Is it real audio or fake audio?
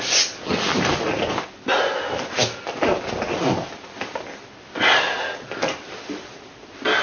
real